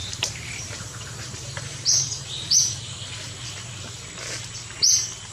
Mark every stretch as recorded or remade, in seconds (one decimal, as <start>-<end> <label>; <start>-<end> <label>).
0.0-2.6 remade; 2.6-5.3 recorded